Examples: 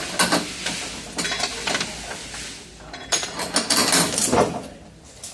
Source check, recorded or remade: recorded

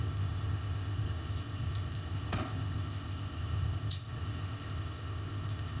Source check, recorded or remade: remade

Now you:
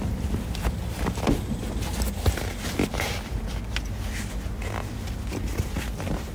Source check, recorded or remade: recorded